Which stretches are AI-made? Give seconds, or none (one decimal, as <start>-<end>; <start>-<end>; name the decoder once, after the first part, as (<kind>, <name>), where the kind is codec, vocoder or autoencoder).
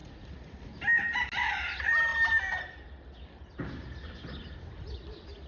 0.0-0.6 (vocoder, Vocos)